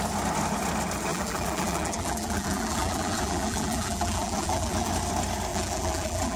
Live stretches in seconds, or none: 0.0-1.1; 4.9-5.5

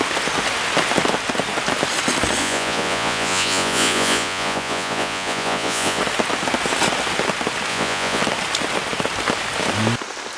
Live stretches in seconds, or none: 0.0-2.4; 6.0-7.7; 8.2-10.4

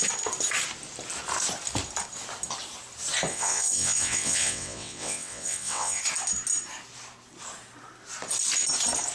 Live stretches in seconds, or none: 0.0-3.3; 6.0-9.1

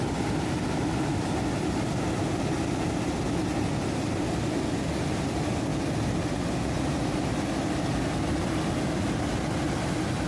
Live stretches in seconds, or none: 0.0-10.3